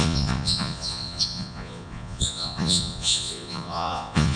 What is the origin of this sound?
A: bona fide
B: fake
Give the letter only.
B